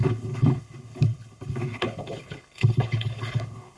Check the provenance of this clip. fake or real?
fake